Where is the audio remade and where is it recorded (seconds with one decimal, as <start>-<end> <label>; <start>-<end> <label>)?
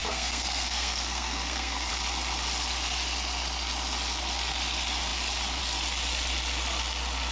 0.0-1.9 remade; 1.9-7.3 recorded